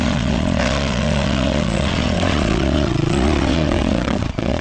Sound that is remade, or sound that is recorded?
remade